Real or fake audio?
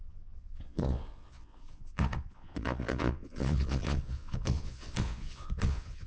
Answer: fake